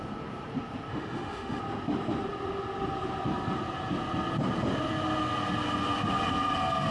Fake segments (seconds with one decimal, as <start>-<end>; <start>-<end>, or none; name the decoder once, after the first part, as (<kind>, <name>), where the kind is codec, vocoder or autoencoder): 0.9-1.6 (autoencoder, DAC-VAE)